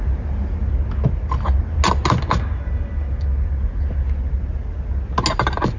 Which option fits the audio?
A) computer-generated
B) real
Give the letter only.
B